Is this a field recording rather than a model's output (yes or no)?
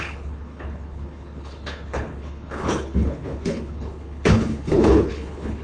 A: no